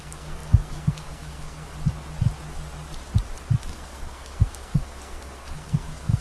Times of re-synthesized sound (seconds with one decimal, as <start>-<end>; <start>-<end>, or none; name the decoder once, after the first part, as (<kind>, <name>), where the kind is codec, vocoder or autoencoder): 0.0-1.7 (codec, SNAC); 3.6-6.2